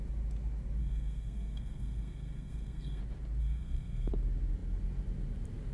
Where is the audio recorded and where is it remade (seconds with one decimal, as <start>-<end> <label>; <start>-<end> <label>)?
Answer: 0.0-0.8 recorded; 0.8-3.0 remade; 3.0-3.4 recorded; 3.4-4.1 remade; 4.1-5.7 recorded